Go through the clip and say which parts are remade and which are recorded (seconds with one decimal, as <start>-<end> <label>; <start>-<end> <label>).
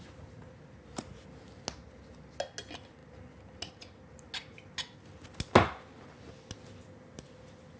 0.0-7.8 recorded